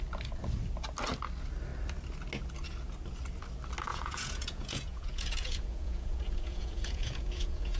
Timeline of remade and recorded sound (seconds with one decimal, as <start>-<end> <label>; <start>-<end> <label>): 0.0-3.9 recorded; 3.9-7.8 remade

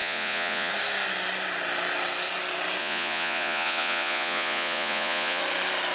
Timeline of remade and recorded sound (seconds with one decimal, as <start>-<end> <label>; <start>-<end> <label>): 0.0-0.7 remade; 0.7-2.8 recorded; 2.8-5.4 remade; 5.4-5.9 recorded

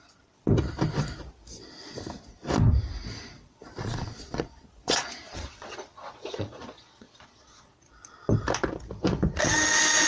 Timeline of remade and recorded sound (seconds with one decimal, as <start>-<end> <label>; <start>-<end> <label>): 0.0-3.8 recorded; 3.8-8.1 remade; 8.1-10.1 recorded

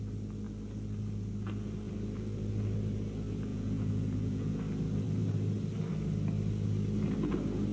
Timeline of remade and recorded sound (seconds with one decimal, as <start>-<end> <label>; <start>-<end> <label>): 0.0-3.5 recorded; 3.5-4.6 remade; 4.6-7.7 recorded

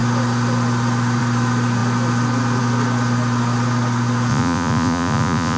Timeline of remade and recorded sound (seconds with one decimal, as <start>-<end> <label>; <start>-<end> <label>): 0.0-4.3 recorded; 4.3-5.6 remade